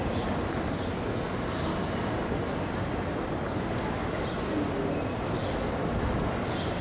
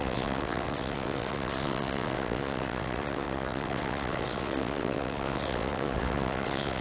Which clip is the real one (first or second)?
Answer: first